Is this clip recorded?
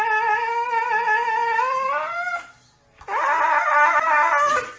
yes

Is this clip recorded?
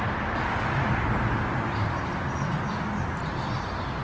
yes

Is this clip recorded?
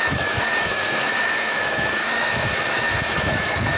no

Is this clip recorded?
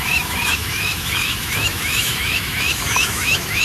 no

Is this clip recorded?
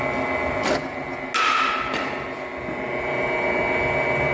yes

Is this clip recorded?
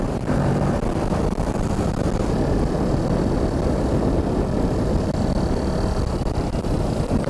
yes